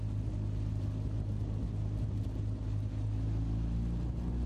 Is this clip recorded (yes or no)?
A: yes